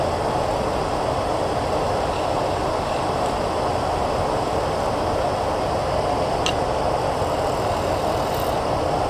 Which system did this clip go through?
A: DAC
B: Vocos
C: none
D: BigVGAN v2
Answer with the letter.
C